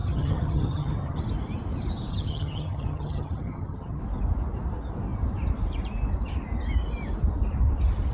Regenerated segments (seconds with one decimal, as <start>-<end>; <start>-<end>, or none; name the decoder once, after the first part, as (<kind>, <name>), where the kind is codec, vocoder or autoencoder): 0.0-1.2 (vocoder, HiFi-GAN); 2.1-4.0